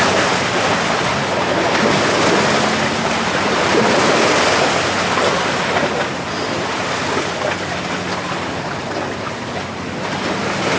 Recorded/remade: recorded